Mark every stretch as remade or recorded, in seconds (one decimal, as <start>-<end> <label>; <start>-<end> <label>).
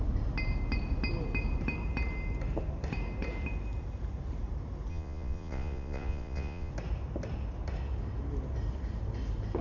0.0-4.9 recorded; 4.9-6.7 remade; 6.7-9.6 recorded